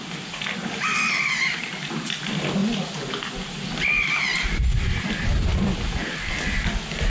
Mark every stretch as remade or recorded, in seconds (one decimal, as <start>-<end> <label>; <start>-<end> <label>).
0.0-2.6 remade; 2.6-5.0 recorded; 5.0-6.0 remade; 6.0-7.1 recorded

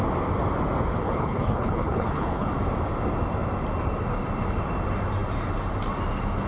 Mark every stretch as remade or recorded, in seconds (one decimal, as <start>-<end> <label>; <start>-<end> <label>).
0.0-1.0 recorded; 1.0-2.5 remade; 2.5-6.5 recorded

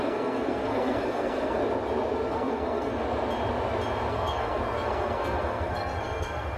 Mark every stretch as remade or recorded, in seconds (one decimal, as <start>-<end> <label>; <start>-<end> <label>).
0.0-1.6 remade; 1.6-2.3 recorded; 2.3-2.9 remade; 2.9-4.1 recorded; 4.1-6.6 remade